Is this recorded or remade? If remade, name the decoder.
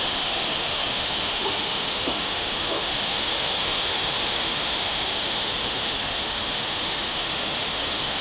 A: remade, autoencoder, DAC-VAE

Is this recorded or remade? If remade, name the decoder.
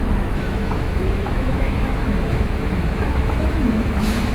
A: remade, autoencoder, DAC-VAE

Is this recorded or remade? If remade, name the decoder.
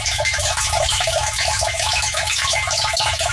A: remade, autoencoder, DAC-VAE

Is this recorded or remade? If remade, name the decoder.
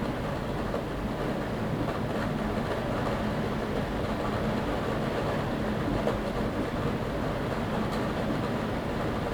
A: recorded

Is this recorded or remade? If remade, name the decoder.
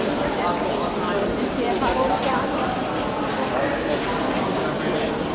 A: recorded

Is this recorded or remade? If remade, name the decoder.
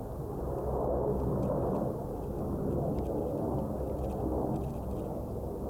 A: recorded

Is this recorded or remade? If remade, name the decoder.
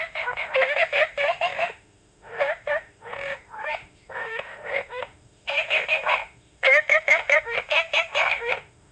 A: remade, autoencoder, DAC-VAE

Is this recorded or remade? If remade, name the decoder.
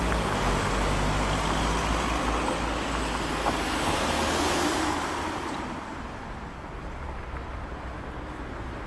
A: recorded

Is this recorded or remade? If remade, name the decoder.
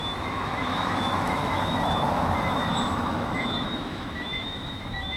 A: remade, autoencoder, DAC-VAE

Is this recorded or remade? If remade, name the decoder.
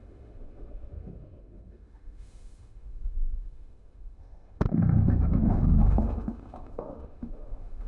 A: remade, autoencoder, DAC-VAE